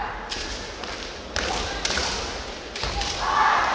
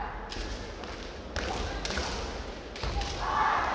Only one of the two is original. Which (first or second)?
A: second